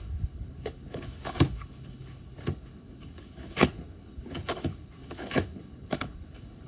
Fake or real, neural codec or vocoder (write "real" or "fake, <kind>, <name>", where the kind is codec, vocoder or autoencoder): fake, codec, HILCodec